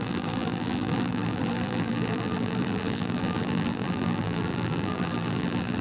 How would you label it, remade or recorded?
remade